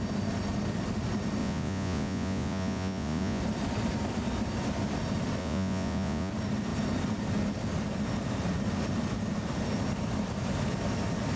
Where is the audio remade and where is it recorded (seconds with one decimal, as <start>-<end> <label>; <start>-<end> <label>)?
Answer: 0.0-1.4 recorded; 1.4-3.4 remade; 3.4-5.4 recorded; 5.4-6.3 remade; 6.3-11.4 recorded